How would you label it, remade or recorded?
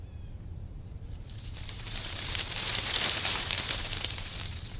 remade